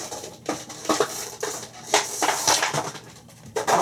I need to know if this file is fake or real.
fake